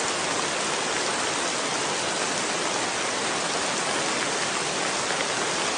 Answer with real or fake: real